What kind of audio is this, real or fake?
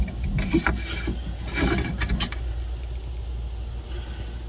real